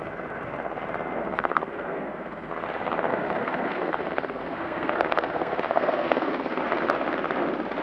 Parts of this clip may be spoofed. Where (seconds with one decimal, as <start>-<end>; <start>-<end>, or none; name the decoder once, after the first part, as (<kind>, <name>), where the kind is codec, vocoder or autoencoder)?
1.2-2.5 (codec, SNAC); 3.1-6.6